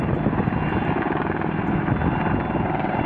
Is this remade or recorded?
recorded